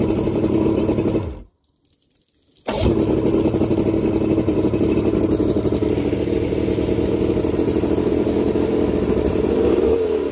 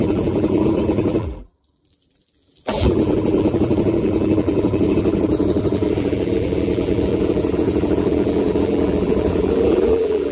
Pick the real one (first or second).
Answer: first